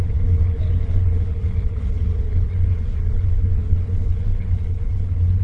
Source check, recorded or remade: remade